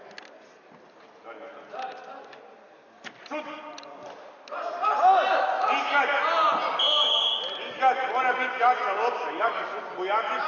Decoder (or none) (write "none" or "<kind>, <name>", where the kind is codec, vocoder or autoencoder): none